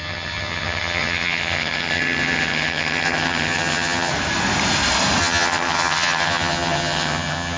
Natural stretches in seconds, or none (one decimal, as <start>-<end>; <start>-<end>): 4.1-5.2

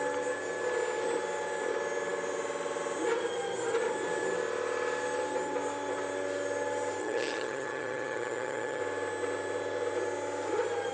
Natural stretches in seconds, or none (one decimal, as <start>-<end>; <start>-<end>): 0.0-7.0; 8.8-10.9